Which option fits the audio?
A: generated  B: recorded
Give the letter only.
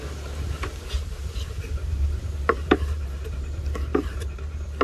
A